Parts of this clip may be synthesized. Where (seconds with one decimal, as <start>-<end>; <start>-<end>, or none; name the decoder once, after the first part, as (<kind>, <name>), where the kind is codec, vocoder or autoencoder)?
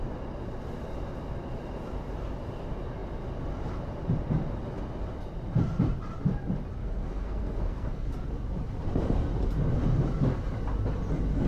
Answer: 6.8-8.1 (codec, SNAC)